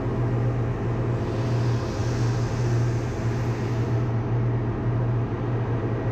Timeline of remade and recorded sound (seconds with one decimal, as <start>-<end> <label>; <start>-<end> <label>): 0.0-6.1 recorded